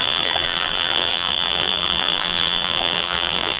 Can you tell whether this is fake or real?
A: fake